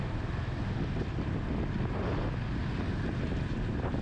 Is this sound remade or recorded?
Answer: recorded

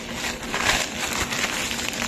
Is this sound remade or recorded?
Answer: recorded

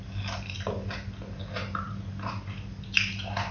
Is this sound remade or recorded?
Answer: recorded